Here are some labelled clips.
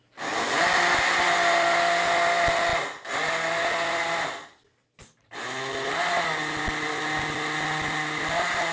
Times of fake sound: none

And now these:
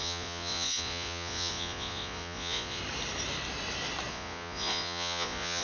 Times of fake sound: 0.0-2.8 (vocoder, Vocos); 4.1-5.6

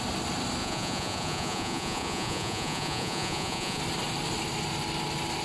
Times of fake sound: 0.6-3.8 (vocoder, Vocos)

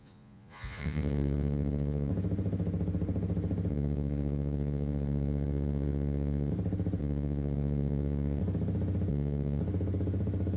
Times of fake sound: 0.0-2.1 (vocoder, Vocos); 3.7-6.5; 7.0-8.4; 9.1-9.6

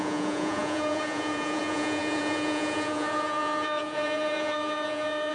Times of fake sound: 0.0-5.3 (vocoder, Vocos)

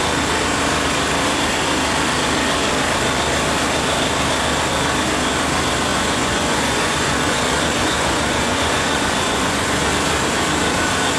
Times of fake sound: 5.9-9.9 (vocoder, Vocos)